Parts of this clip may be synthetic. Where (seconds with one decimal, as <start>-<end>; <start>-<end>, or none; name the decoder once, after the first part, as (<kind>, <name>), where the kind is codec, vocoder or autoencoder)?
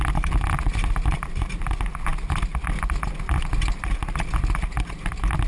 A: none